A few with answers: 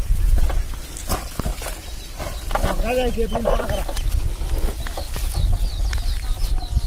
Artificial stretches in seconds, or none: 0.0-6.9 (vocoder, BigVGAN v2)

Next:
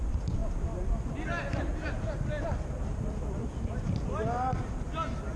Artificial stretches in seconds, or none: none

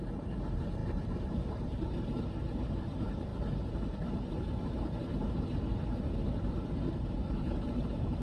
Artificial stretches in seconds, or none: 0.0-0.8 (vocoder, BigVGAN v2); 1.5-3.3; 6.5-8.2